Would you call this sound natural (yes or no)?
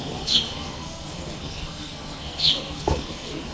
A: no